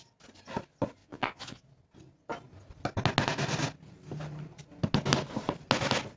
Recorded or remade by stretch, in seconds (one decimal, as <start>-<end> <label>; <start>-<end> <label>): 0.0-1.0 recorded; 1.0-1.6 remade; 1.6-6.2 recorded